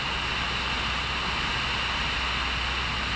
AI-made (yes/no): no